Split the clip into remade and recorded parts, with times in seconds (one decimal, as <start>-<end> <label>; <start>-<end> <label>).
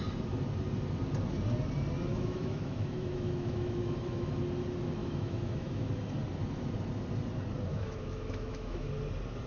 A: 0.0-2.1 recorded; 2.1-4.3 remade; 4.3-5.0 recorded; 5.0-5.9 remade; 5.9-7.7 recorded; 7.7-8.9 remade; 8.9-9.5 recorded